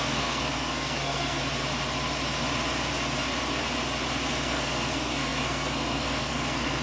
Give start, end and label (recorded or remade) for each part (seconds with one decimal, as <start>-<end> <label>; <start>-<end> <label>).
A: 0.0-1.4 remade; 1.4-4.3 recorded; 4.3-6.8 remade